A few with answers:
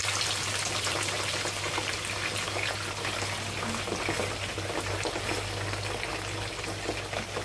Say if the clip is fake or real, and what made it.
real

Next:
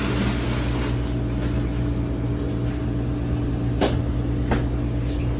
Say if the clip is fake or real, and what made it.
real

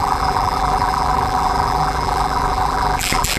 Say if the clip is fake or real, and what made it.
fake, vocoder, BigVGAN v2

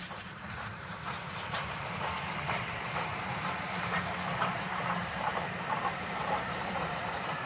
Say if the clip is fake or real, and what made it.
fake, vocoder, BigVGAN v2